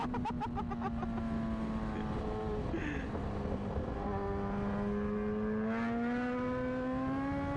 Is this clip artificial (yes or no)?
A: no